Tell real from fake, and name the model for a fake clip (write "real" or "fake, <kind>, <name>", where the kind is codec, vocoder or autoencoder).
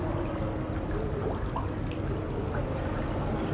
real